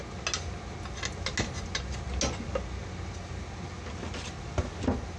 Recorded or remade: recorded